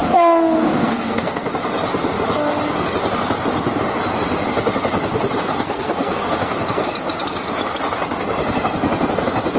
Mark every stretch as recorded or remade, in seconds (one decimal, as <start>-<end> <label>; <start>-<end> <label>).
0.0-1.5 remade; 1.5-5.5 recorded; 5.5-6.9 remade; 6.9-9.6 recorded